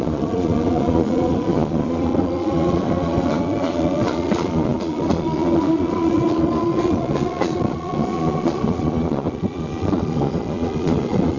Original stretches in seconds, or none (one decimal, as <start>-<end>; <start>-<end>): none

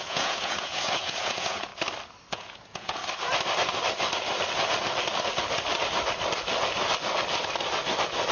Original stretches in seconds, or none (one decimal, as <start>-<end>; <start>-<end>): 1.7-2.3; 3.0-8.3

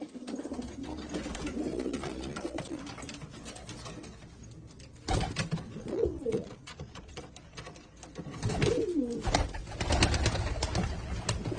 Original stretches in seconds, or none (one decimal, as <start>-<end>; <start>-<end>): 0.0-1.7; 2.8-5.8; 7.2-11.6

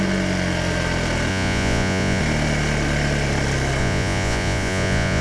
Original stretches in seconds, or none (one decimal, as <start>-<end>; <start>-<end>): 0.0-1.3; 2.2-3.8